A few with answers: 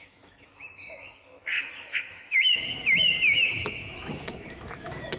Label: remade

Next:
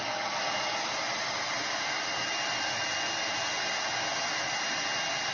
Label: recorded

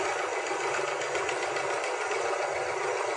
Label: recorded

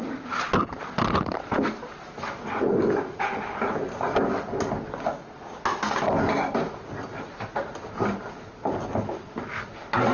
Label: recorded